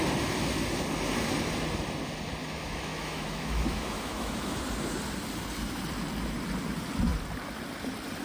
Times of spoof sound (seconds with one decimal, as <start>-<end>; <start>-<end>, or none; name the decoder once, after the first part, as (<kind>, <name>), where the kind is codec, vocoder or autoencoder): 2.4-4.6 (autoencoder, DAC-VAE)